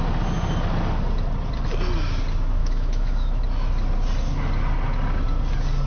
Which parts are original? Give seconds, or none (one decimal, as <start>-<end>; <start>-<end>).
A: 0.0-2.6; 3.4-5.9